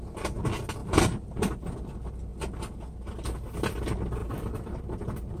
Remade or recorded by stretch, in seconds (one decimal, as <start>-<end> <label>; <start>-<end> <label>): 0.0-0.8 recorded; 0.8-1.7 remade; 1.7-4.2 recorded; 4.2-4.8 remade; 4.8-5.4 recorded

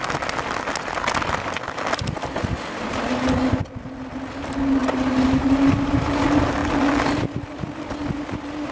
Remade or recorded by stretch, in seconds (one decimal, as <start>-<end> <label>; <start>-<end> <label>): 0.0-4.8 recorded; 4.8-6.1 remade; 6.1-8.7 recorded

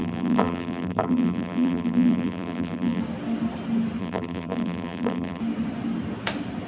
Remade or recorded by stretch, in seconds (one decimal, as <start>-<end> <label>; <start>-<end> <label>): 0.0-3.0 remade; 3.0-4.0 recorded; 4.0-5.4 remade; 5.4-6.7 recorded

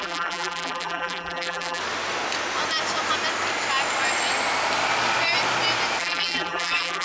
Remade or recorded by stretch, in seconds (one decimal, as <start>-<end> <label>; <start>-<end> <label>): 0.0-1.8 remade; 1.8-6.0 recorded; 6.0-7.0 remade

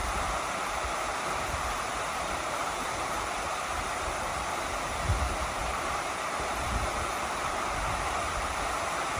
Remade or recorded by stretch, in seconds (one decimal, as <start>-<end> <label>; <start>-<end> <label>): 0.0-4.6 remade; 4.6-5.6 recorded; 5.6-8.5 remade; 8.5-9.2 recorded

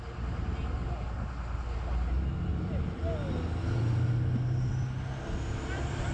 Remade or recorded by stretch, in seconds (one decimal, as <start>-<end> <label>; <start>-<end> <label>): 0.0-6.1 recorded

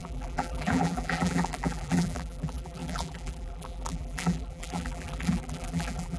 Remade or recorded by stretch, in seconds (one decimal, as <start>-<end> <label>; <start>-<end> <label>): 0.0-6.2 remade

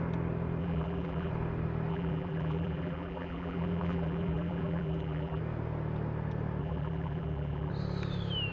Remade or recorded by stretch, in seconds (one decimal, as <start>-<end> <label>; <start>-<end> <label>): 0.0-0.6 recorded; 0.6-1.3 remade; 1.3-1.9 recorded; 1.9-5.4 remade; 5.4-6.6 recorded; 6.6-7.7 remade; 7.7-8.5 recorded